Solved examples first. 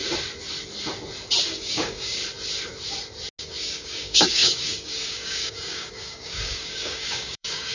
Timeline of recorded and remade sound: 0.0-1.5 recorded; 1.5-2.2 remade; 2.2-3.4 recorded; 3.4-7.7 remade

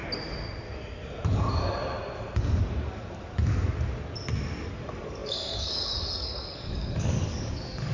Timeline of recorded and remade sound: 0.0-4.7 recorded; 4.7-7.9 remade

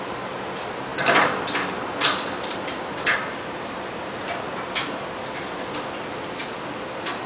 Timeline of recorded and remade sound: 0.0-7.3 recorded

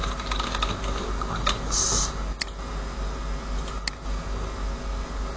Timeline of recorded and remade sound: 0.0-5.4 recorded

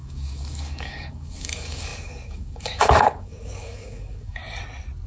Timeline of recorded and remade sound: 0.0-4.4 remade; 4.4-5.1 recorded

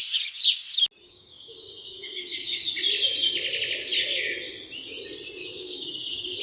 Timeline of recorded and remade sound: 0.0-1.0 recorded; 1.0-2.7 remade; 2.7-5.4 recorded; 5.4-6.4 remade

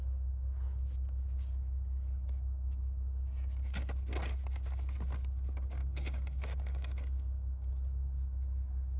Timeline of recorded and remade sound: 0.0-5.8 recorded; 5.8-7.7 remade; 7.7-9.0 recorded

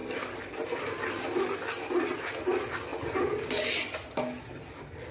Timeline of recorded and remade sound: 0.0-5.1 recorded